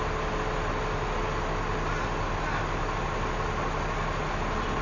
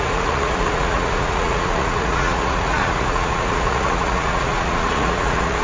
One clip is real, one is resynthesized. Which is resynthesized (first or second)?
second